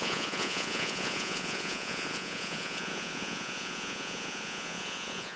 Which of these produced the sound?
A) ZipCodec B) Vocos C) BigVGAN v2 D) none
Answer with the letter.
B